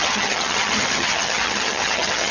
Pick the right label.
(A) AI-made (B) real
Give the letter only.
A